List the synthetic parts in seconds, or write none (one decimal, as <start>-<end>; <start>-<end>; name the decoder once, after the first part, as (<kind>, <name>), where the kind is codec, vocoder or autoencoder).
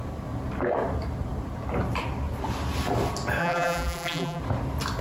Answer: 3.4-4.4 (vocoder, BigVGAN v2)